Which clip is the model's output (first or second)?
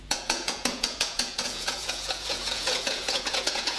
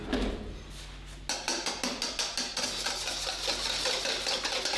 first